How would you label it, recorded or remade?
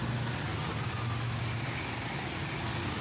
recorded